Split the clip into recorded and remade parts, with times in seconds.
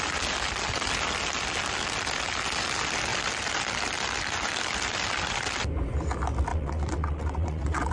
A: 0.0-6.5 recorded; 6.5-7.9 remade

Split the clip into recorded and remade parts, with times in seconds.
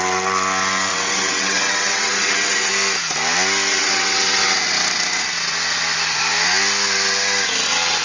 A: 0.0-0.9 recorded; 0.9-2.7 remade; 2.7-3.7 recorded; 3.7-4.5 remade; 4.5-8.0 recorded